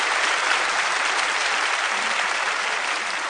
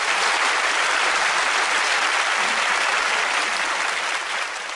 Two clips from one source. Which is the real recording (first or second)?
first